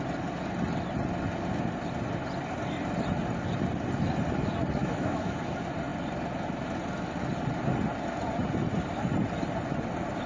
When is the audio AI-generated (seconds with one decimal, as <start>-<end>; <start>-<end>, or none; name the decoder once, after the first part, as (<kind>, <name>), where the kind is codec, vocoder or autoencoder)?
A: 4.8-5.5 (autoencoder, DAC-VAE)